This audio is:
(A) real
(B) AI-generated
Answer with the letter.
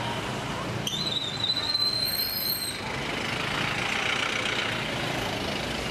A